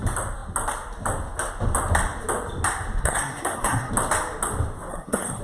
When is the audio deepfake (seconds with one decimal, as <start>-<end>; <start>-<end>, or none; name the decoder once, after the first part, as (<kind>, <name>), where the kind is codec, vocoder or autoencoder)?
3.0-3.9 (codec, SNAC); 4.9-5.4